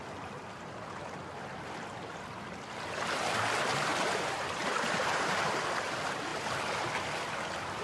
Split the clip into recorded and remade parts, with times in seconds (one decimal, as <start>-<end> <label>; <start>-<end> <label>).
0.0-3.9 recorded; 3.9-5.6 remade; 5.6-7.8 recorded